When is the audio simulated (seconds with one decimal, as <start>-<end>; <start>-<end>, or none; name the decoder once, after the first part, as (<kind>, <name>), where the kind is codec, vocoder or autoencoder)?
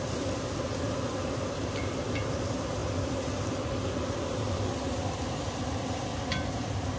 none